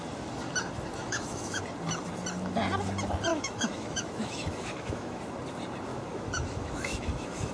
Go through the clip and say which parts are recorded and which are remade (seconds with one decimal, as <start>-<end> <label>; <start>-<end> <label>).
0.0-1.0 recorded; 1.0-1.6 remade; 1.6-3.3 recorded; 3.3-5.2 remade; 5.2-5.9 recorded; 5.9-7.5 remade